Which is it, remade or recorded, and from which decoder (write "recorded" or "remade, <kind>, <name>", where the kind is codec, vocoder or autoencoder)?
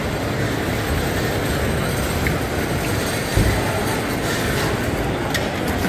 recorded